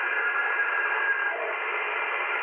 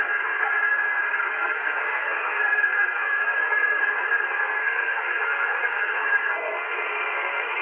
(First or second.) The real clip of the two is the first